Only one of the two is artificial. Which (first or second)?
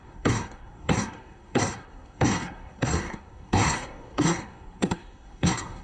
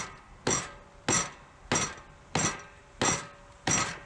first